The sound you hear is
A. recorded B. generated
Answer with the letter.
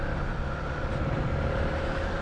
A